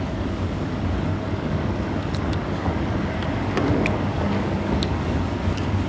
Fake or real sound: fake